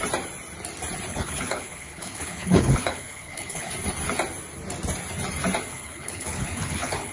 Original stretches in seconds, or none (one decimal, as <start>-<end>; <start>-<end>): 0.0-1.1; 3.7-5.7